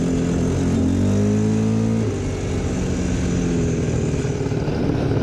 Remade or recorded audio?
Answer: recorded